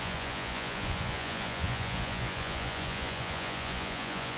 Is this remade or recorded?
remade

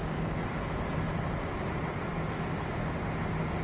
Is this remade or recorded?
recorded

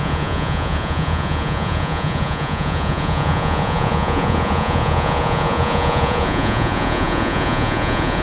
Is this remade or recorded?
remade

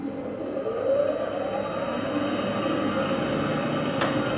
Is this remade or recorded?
recorded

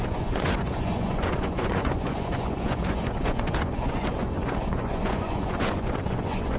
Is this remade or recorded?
remade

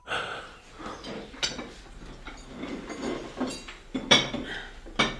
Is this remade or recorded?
recorded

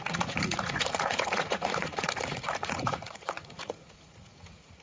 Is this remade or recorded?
remade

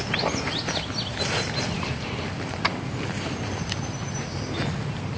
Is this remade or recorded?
recorded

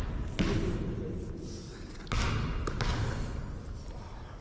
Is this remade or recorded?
recorded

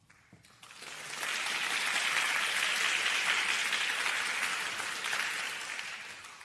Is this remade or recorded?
recorded